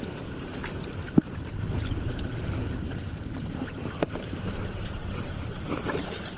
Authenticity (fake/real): fake